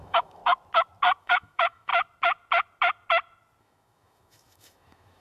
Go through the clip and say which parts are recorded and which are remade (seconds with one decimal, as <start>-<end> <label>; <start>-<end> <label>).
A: 0.0-0.4 remade; 0.4-1.2 recorded; 1.2-1.9 remade; 1.9-3.6 recorded; 3.6-5.2 remade